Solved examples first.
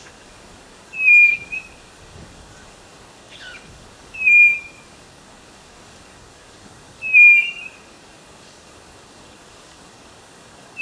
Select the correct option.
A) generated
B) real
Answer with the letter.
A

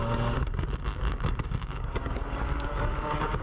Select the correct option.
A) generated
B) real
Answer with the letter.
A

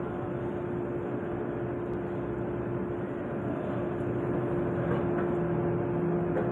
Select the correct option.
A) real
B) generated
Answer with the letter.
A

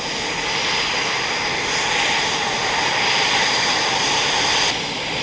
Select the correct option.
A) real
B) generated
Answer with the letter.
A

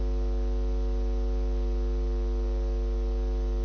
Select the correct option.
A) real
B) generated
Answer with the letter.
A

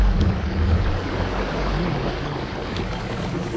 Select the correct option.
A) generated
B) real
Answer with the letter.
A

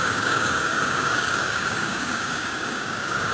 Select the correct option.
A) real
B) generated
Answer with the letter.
B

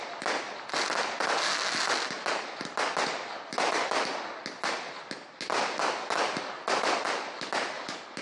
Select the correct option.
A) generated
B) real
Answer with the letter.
B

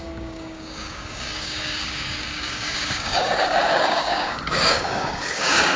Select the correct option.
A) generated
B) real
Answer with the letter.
A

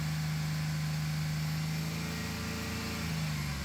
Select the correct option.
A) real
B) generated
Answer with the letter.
A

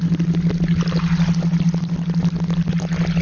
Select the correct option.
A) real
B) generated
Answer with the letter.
A